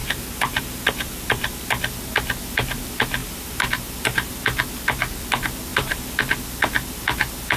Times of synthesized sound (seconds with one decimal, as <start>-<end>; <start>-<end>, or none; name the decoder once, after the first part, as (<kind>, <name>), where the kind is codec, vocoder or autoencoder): 0.0-1.5 (vocoder, BigVGAN v2); 3.2-4.3; 5.7-6.2